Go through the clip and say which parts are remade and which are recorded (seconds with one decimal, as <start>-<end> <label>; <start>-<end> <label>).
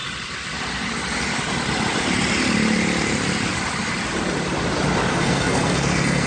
0.0-5.1 recorded; 5.1-6.3 remade